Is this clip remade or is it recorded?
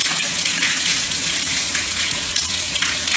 remade